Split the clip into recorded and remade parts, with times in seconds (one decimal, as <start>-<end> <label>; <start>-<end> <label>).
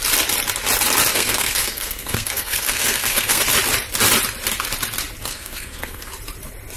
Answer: 0.0-1.1 recorded; 1.1-3.4 remade; 3.4-5.2 recorded; 5.2-6.1 remade; 6.1-6.8 recorded